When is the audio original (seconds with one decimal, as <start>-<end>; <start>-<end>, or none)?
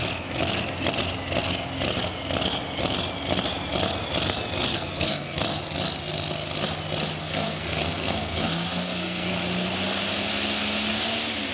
0.0-4.7; 5.4-7.2; 9.3-11.5